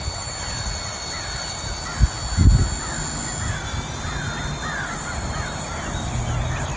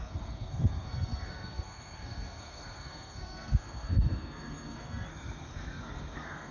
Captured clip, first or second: first